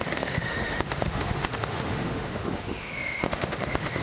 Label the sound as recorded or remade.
remade